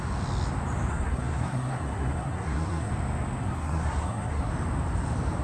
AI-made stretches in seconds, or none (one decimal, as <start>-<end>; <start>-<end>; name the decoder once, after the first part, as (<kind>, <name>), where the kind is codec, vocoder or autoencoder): 0.9-2.9 (codec, SNAC); 3.4-4.5